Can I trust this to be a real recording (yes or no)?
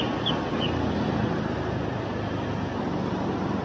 yes